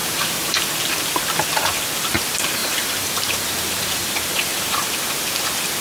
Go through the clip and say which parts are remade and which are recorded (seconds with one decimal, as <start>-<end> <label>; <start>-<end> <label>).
0.0-0.7 remade; 0.7-2.6 recorded; 2.6-5.1 remade; 5.1-5.8 recorded